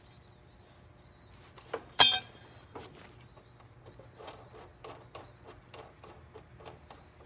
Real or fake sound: real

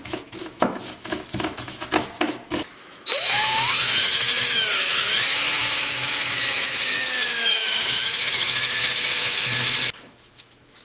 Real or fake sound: fake